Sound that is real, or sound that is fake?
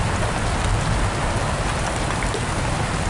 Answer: real